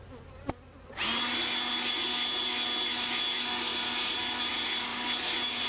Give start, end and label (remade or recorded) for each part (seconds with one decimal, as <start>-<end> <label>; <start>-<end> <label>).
0.0-5.7 recorded